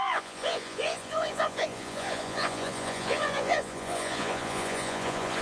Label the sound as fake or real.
fake